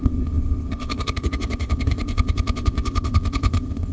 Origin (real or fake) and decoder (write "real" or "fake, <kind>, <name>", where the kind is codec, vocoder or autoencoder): fake, codec, ZipCodec